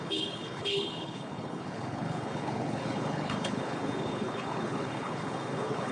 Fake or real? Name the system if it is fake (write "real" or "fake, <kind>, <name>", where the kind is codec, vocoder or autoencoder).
fake, codec, HILCodec